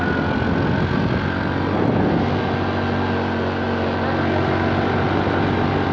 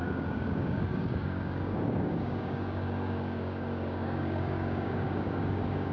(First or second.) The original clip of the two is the first